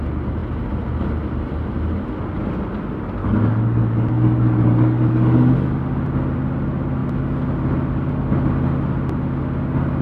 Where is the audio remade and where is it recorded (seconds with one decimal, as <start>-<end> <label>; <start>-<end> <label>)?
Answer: 0.0-3.2 recorded; 3.2-5.7 remade; 5.7-10.0 recorded